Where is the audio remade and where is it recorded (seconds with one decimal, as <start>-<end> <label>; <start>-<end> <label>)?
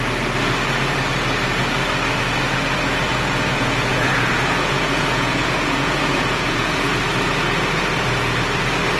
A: 0.0-3.1 recorded; 3.1-7.0 remade; 7.0-9.0 recorded